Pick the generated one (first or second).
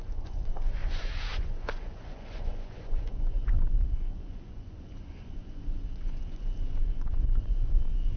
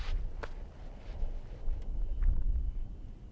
first